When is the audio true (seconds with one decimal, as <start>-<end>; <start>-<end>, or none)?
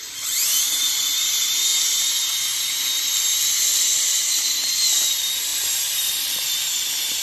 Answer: 1.7-5.1; 5.5-6.1